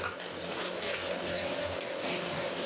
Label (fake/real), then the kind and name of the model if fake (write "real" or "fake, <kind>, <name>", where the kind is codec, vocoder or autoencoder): fake, codec, DAC